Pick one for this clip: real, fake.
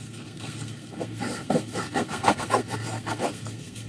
fake